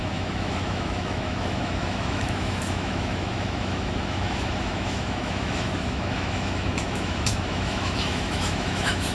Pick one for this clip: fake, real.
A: fake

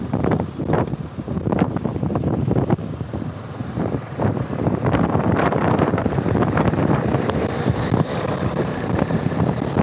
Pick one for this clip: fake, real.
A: fake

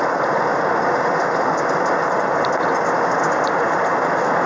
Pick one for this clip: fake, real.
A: real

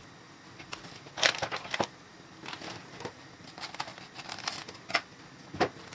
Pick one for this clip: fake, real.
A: fake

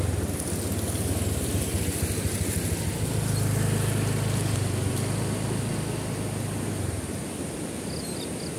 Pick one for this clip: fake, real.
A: real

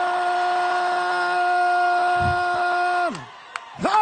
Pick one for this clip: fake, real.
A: real